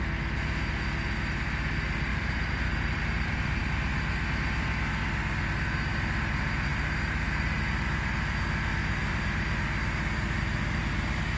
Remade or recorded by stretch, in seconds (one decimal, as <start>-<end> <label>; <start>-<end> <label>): 0.0-2.1 recorded; 2.1-3.6 remade; 3.6-6.7 recorded; 6.7-7.6 remade; 7.6-11.4 recorded